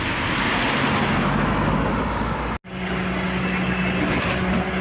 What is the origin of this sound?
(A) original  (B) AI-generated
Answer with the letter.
A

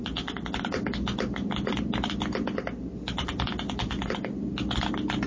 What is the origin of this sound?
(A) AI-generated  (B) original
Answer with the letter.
B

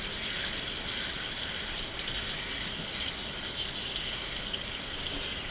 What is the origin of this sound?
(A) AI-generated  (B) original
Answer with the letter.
B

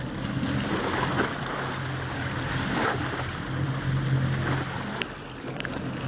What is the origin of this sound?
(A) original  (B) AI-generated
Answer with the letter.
A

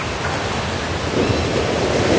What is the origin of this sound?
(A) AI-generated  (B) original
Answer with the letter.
B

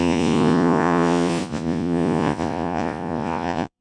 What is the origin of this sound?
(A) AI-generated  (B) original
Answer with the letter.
A